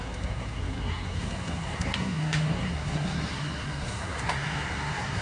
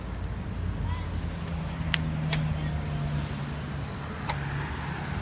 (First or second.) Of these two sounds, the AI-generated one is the first